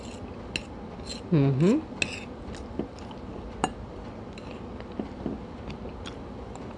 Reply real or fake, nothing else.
real